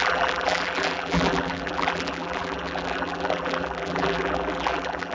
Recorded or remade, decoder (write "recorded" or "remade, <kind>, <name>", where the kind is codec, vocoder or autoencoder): remade, vocoder, BigVGAN v2